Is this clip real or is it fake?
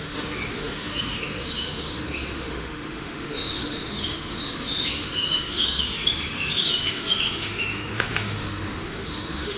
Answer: fake